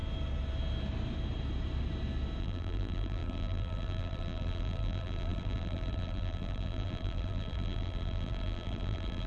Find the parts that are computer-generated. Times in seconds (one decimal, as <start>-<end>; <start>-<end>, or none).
2.4-9.3